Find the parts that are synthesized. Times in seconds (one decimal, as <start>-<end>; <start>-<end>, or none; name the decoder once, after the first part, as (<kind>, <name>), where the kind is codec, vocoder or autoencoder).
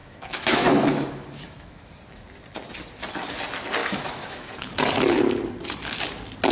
0.0-1.9 (autoencoder, DAC-VAE); 3.8-4.7